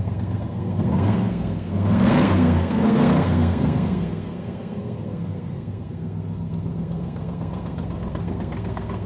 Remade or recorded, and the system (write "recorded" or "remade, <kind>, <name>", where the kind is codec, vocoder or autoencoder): remade, codec, SNAC